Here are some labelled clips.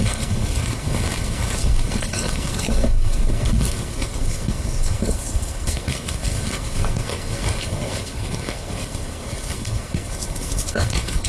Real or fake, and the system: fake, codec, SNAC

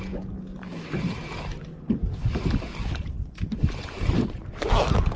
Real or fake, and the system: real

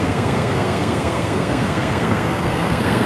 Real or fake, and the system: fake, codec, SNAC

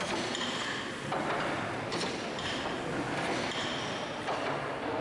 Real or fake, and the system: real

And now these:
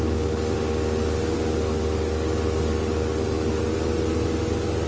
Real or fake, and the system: real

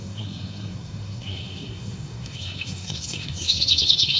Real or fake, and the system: fake, codec, SNAC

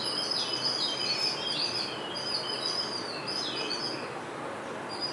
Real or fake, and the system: real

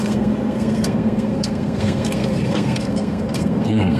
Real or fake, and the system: fake, codec, SNAC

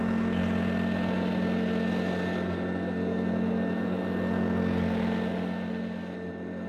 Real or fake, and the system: real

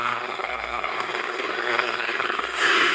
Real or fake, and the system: fake, codec, SNAC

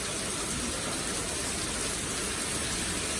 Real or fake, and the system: real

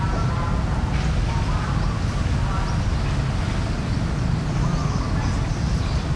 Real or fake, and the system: real